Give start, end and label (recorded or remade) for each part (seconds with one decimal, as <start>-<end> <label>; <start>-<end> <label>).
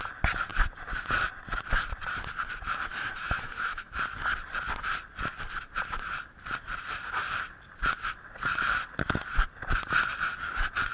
0.0-2.9 recorded; 2.9-4.0 remade; 4.0-10.9 recorded